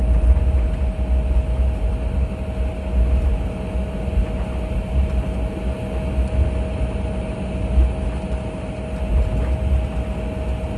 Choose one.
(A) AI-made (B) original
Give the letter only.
B